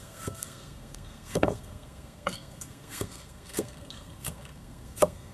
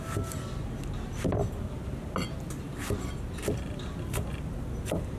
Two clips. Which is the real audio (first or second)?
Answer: second